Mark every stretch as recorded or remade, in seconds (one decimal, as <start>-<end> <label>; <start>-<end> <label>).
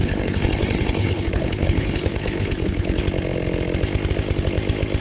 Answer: 0.0-3.0 remade; 3.0-5.0 recorded